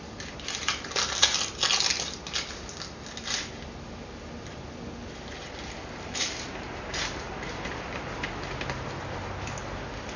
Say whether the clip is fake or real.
real